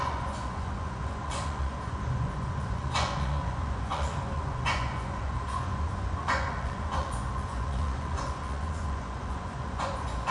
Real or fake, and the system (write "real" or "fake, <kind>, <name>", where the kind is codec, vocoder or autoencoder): fake, vocoder, Vocos